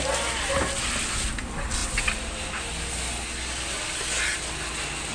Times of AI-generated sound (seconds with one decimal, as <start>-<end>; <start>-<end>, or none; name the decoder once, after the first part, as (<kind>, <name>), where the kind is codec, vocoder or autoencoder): none